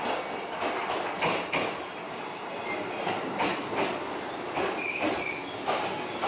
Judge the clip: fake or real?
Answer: real